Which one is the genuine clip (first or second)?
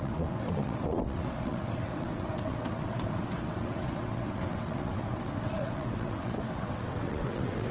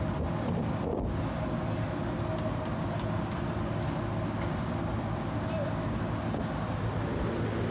second